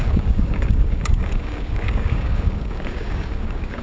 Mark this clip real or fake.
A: fake